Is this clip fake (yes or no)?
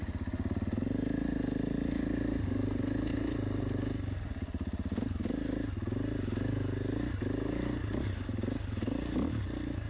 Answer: no